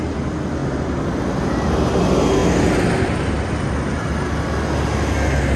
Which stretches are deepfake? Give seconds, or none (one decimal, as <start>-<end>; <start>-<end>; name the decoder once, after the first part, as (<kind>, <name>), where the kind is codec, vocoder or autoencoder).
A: none